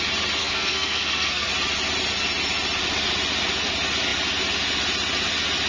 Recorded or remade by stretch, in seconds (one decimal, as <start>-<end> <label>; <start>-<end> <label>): 0.0-0.4 recorded; 0.4-1.5 remade; 1.5-5.7 recorded